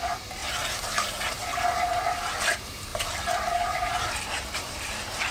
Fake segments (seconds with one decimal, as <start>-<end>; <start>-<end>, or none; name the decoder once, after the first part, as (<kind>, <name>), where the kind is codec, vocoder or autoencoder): 0.0-0.4 (vocoder, BigVGAN v2); 2.4-5.3